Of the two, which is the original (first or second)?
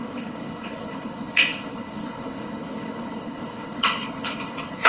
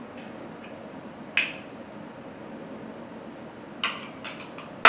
second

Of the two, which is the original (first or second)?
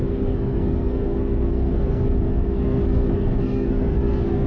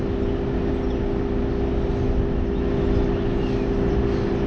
second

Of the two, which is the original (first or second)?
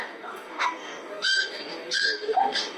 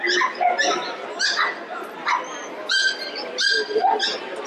second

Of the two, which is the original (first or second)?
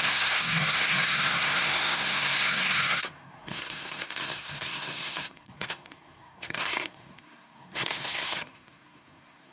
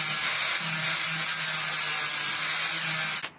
second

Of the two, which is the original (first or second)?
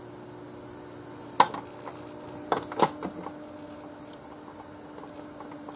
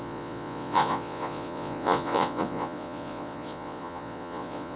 first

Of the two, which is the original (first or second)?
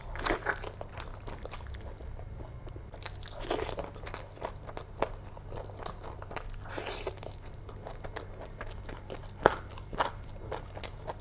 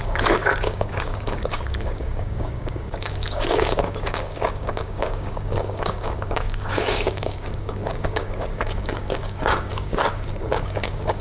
first